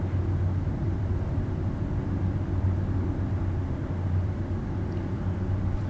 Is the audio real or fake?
fake